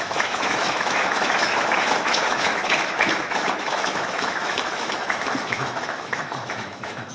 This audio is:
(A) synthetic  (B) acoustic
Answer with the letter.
A